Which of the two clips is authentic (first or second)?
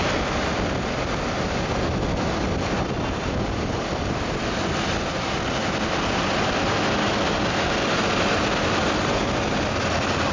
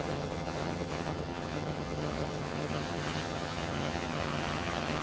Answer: first